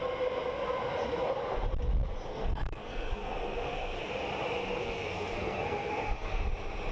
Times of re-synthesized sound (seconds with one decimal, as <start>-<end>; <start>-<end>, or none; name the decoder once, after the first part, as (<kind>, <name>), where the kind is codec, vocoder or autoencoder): 2.3-4.1 (codec, SNAC); 4.8-6.4